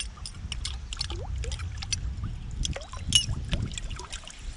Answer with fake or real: real